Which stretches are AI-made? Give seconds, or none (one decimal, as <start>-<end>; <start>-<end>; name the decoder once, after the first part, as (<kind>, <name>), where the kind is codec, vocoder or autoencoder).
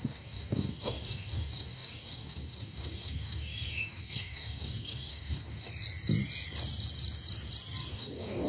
0.0-5.7 (codec, DAC); 7.9-8.5